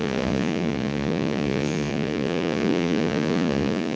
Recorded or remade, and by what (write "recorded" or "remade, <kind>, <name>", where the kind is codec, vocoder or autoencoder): remade, vocoder, Vocos